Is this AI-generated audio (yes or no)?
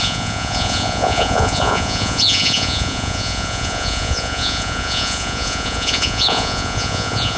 yes